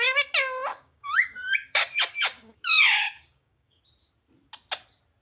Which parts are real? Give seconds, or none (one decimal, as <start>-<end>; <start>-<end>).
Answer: 0.0-0.7; 3.8-5.2